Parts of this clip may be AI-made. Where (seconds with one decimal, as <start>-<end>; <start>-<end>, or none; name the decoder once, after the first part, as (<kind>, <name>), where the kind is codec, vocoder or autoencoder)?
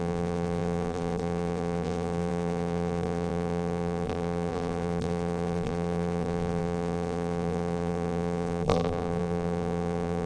0.0-10.3 (vocoder, BigVGAN v2)